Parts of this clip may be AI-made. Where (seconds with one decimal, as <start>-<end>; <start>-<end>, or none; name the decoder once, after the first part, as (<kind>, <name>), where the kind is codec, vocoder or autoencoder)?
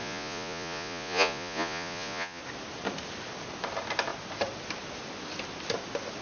0.0-2.4 (vocoder, Vocos)